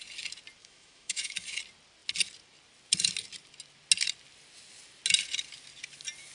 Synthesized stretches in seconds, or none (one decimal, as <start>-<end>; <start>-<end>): 0.6-1.6